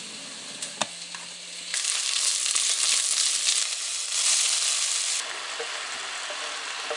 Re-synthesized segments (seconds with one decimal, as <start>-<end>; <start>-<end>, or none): none